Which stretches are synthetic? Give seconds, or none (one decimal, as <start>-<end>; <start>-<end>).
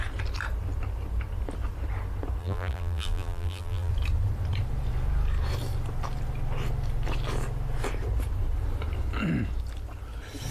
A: 2.4-3.9